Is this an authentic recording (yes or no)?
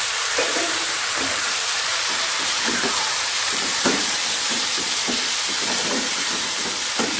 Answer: no